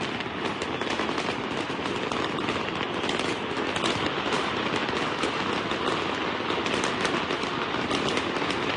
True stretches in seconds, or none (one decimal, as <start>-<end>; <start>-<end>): 4.8-7.9